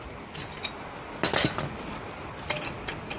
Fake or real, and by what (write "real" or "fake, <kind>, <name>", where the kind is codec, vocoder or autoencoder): real